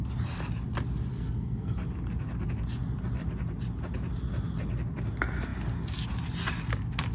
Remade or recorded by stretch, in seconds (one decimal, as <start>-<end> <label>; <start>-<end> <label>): 0.0-1.1 recorded; 1.1-1.8 remade; 1.8-7.1 recorded